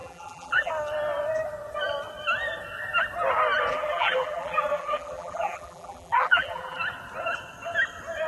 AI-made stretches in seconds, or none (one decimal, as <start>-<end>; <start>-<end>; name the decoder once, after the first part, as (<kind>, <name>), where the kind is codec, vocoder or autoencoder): 0.0-0.7 (vocoder, BigVGAN v2); 3.7-6.8

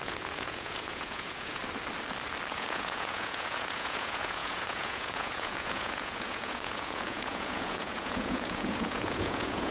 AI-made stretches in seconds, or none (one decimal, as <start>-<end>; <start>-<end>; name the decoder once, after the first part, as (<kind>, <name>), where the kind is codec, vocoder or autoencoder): 0.0-1.6 (vocoder, Vocos); 2.5-9.7

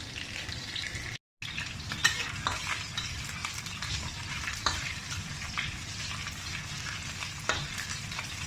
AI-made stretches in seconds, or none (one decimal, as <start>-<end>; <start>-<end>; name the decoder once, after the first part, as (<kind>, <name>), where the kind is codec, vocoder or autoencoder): 3.4-6.1 (vocoder, BigVGAN v2)

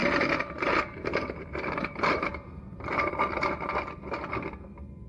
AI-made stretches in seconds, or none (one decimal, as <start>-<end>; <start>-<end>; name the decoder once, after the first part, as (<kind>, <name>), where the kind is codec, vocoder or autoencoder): 0.0-3.1 (vocoder, BigVGAN v2)